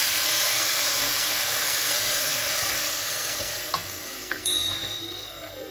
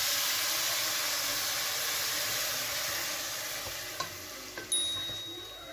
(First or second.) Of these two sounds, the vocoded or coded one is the first